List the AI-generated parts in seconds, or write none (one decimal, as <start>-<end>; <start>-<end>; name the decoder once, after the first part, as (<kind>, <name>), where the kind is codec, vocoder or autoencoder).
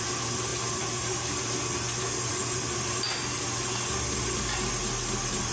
none